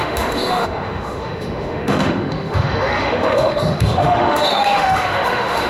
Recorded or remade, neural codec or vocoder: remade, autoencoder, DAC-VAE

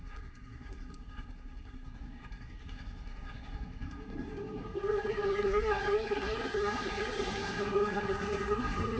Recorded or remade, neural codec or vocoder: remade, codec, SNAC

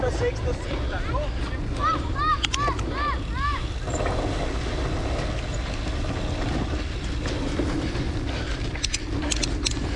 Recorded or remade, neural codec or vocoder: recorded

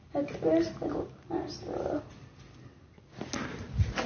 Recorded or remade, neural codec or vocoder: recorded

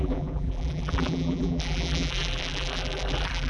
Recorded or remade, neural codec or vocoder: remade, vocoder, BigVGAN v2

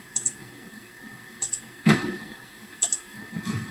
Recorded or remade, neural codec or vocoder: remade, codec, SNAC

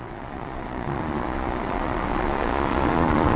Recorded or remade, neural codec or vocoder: remade, vocoder, Vocos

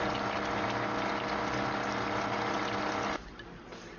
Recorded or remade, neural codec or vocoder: recorded